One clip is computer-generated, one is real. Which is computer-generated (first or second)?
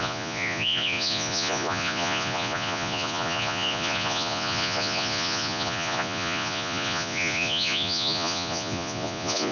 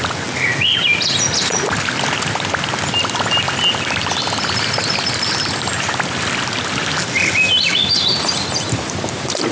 first